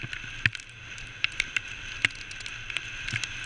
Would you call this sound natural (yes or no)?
yes